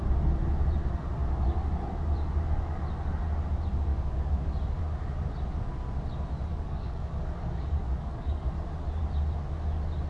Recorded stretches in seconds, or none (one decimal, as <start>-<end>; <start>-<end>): 0.0-6.5; 8.5-10.1